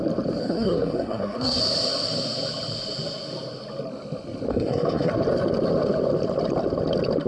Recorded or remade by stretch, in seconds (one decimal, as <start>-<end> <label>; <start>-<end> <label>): 0.0-0.4 recorded; 0.4-1.6 remade; 1.6-4.5 recorded; 4.5-5.1 remade; 5.1-7.3 recorded